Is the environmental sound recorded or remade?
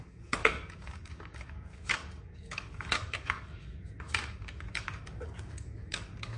remade